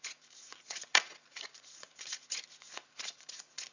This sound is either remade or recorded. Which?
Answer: remade